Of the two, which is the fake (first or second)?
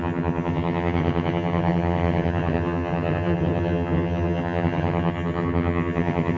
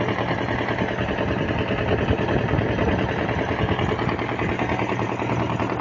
first